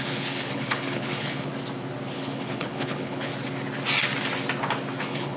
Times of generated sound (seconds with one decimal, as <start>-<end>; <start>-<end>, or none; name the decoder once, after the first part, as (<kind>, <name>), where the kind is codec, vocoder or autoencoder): 0.0-1.5 (codec, HILCodec); 2.1-3.3; 5.0-5.4

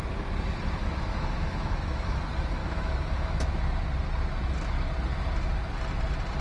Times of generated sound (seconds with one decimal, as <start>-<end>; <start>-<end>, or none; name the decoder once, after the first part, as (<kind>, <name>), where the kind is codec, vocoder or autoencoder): 0.8-2.2 (autoencoder, DAC-VAE); 2.6-3.6

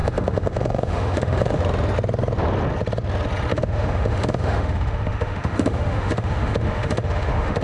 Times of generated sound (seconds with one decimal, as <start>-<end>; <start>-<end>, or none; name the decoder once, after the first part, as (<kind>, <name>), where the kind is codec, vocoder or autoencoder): 0.0-1.6 (autoencoder, DAC-VAE); 3.5-7.6

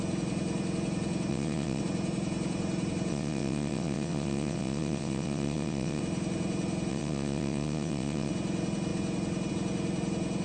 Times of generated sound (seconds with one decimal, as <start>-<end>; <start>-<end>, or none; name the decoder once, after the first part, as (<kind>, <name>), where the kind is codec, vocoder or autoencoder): 1.3-1.8 (vocoder, WaveNeXt); 3.1-6.0; 6.9-8.3